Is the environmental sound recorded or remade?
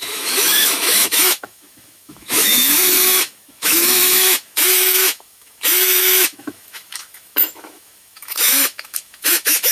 remade